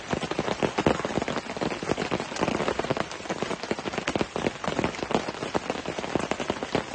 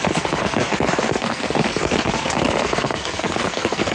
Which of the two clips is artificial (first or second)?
second